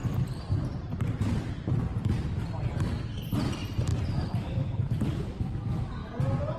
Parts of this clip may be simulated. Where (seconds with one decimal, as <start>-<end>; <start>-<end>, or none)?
0.0-1.5; 1.9-2.5